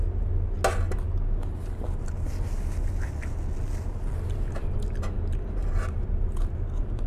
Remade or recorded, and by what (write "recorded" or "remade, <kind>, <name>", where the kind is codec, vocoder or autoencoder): recorded